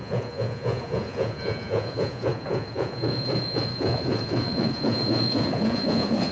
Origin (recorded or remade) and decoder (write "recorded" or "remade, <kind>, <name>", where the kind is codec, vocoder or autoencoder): remade, vocoder, Vocos